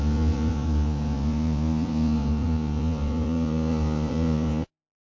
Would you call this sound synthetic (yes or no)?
yes